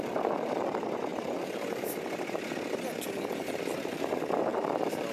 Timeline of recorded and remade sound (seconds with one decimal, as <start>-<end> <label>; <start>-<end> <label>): 0.0-5.1 recorded